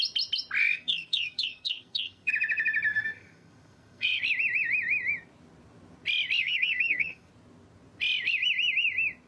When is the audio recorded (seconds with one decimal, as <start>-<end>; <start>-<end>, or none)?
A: 0.0-0.6; 2.3-2.9; 4.2-6.4; 7.3-9.3